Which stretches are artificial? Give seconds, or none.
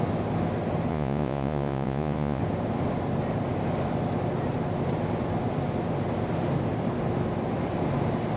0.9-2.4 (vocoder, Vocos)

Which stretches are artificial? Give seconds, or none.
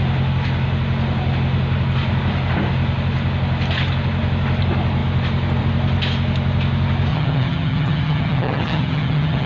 7.1-9.5 (vocoder, HiFi-GAN)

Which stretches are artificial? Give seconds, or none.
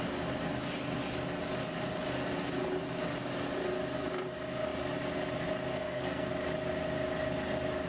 5.7-6.3 (codec, SNAC)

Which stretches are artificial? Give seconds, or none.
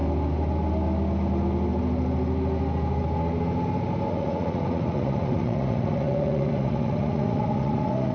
4.1-8.1 (vocoder, Vocos)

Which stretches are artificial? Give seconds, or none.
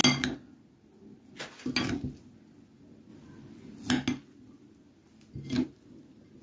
none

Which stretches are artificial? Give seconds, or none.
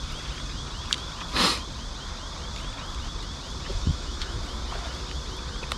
3.7-4.4 (autoencoder, DAC-VAE)